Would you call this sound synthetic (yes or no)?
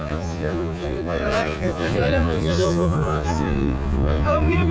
yes